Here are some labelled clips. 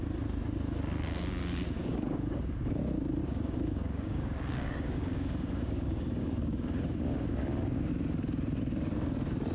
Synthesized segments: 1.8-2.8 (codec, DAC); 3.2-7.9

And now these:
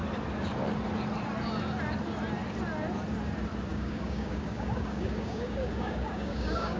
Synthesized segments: 3.7-6.8 (codec, DAC)

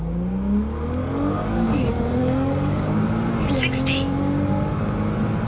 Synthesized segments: 1.0-1.8 (codec, DAC); 2.2-2.9

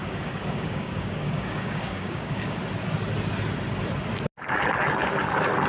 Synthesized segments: 0.0-2.6 (codec, DAC)

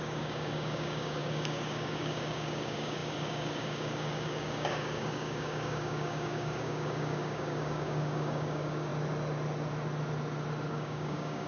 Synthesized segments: 0.0-8.9 (codec, DAC); 10.7-11.5

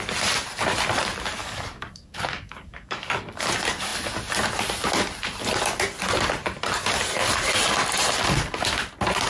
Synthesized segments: 1.4-3.5 (codec, DAC)